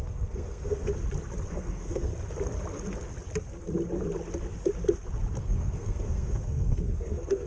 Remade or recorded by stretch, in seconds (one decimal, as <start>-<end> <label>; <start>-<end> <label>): 0.0-0.9 remade; 0.9-1.5 recorded; 1.5-2.1 remade; 2.1-5.4 recorded; 5.4-7.5 remade